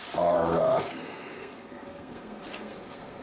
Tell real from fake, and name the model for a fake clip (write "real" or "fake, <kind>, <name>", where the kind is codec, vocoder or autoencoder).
fake, codec, SNAC